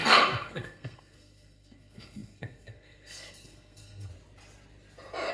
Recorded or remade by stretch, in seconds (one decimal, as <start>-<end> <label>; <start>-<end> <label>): 0.0-4.1 remade; 4.1-5.3 recorded